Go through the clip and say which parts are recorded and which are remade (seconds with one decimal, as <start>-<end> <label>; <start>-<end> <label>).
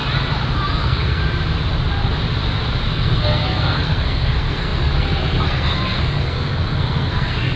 0.0-0.7 recorded; 0.7-1.2 remade; 1.2-2.9 recorded; 2.9-7.6 remade